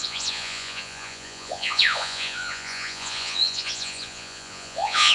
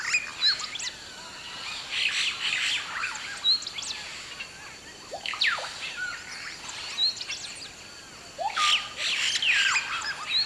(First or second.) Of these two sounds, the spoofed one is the first